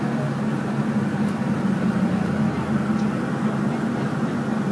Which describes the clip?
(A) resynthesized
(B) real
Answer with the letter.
B